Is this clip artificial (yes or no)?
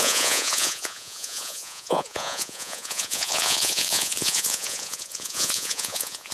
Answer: yes